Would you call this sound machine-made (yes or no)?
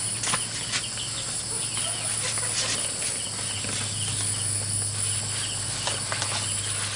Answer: no